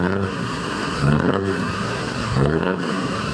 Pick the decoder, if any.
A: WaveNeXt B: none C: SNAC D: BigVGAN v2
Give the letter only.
C